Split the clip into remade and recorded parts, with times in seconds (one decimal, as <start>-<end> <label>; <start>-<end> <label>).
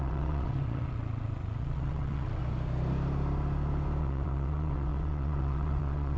0.0-2.4 remade; 2.4-4.0 recorded; 4.0-6.2 remade